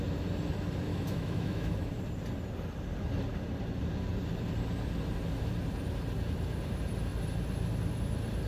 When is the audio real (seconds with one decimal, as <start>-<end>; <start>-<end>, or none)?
0.0-0.9; 1.9-8.5